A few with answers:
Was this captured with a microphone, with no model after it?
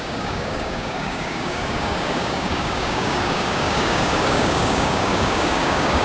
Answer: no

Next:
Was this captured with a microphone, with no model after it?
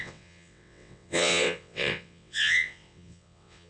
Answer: no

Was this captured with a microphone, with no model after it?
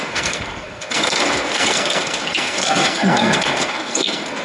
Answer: no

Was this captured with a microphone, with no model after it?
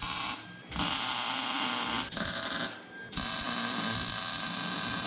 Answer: yes